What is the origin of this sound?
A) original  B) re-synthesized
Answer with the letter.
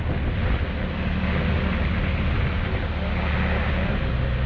A